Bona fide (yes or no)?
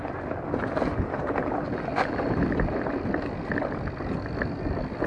yes